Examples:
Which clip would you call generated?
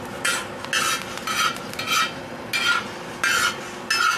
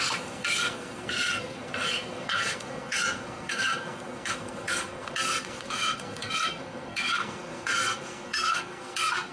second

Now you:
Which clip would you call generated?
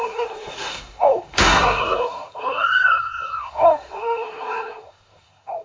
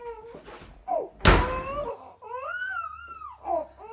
first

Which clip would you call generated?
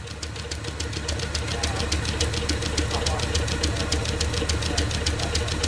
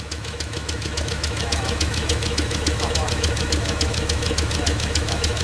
second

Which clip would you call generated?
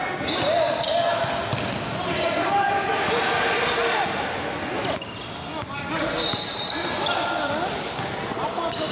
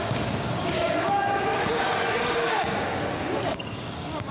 second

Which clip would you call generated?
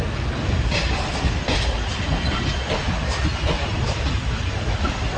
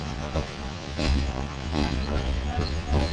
second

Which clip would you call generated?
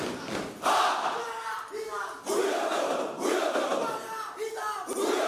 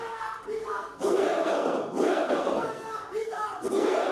second